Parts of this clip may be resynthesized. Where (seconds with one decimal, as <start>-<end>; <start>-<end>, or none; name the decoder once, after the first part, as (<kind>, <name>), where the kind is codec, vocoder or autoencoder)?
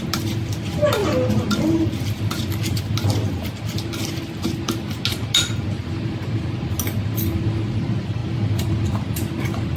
none